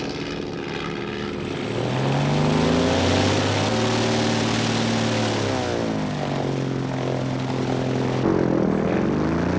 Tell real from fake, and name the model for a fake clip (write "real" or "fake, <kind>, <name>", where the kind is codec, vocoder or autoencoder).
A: real